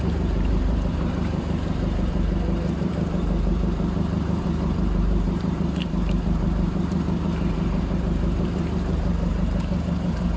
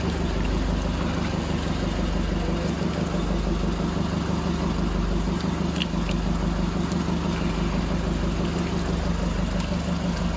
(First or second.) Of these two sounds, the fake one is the first